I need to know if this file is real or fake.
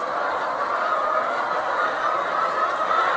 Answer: real